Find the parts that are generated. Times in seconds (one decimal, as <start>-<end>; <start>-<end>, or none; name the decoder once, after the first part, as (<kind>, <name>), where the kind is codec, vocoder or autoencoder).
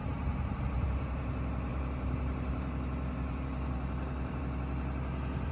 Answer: 0.0-0.6 (vocoder, BigVGAN v2); 1.7-4.4